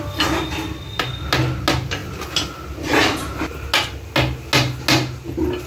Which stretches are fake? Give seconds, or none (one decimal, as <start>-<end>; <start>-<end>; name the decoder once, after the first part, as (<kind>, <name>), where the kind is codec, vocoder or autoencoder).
none